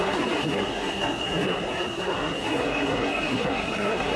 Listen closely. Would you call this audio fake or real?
fake